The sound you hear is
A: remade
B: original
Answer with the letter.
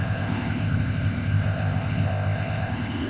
A